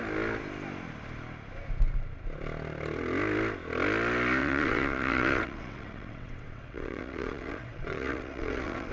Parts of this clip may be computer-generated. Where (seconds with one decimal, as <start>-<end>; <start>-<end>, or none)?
4.4-8.9